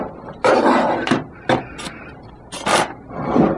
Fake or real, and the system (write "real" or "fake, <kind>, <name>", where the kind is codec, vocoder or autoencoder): real